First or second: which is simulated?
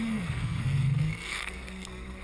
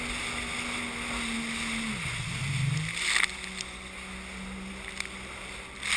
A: first